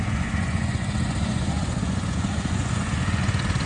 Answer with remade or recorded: remade